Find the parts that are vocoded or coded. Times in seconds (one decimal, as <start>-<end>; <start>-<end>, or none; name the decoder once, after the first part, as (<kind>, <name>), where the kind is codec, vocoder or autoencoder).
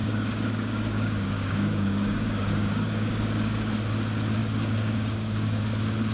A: 0.0-3.7 (codec, DAC); 4.4-5.6